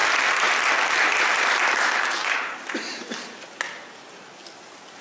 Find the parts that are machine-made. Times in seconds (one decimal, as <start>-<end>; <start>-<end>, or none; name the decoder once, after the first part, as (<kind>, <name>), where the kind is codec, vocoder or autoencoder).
0.0-3.0 (vocoder, BigVGAN v2)